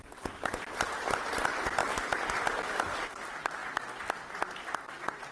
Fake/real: real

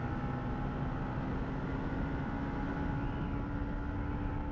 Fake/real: real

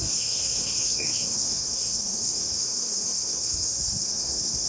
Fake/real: fake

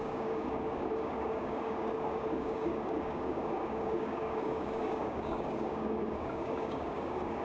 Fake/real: fake